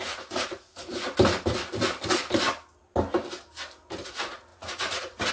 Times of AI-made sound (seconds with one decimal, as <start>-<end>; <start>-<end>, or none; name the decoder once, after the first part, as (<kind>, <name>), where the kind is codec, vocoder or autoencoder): 0.0-0.9 (vocoder, Vocos); 4.1-5.3

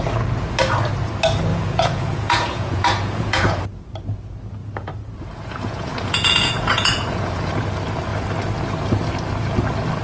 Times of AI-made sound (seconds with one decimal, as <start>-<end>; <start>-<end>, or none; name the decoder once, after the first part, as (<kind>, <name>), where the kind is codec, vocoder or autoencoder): 1.5-3.6 (vocoder, Vocos); 4.6-7.5